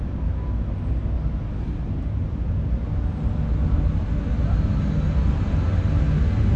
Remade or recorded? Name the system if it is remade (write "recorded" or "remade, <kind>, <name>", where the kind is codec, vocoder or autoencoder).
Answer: recorded